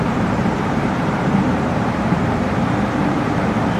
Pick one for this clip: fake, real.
fake